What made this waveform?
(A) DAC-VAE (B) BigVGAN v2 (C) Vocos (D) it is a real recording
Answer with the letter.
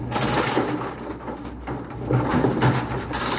D